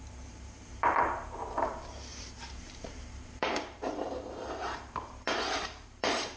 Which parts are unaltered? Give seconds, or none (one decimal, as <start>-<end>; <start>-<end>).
none

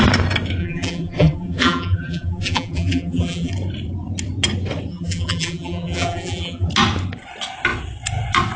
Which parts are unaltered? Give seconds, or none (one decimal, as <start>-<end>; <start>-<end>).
0.0-0.6; 3.5-4.9; 6.7-8.6

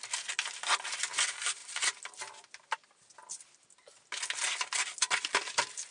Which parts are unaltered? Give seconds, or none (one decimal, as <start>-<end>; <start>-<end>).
0.0-5.9